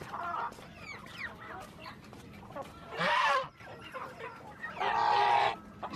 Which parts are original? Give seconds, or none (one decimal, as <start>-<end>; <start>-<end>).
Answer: none